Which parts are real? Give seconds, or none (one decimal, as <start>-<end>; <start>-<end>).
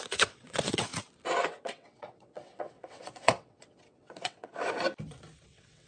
0.9-1.5; 4.5-5.4